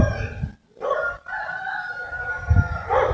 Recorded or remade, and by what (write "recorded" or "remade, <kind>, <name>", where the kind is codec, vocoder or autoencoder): recorded